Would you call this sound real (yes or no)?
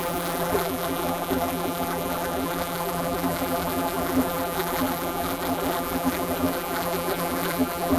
no